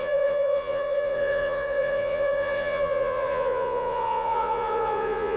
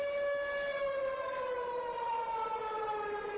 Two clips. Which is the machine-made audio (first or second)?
first